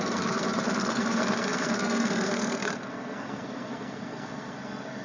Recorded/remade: remade